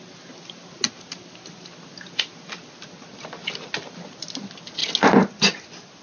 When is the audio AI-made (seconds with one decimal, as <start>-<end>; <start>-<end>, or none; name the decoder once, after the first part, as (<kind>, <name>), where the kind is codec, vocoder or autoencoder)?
none